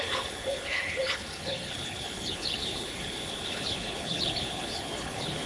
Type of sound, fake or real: fake